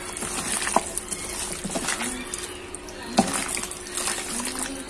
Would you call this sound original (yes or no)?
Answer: yes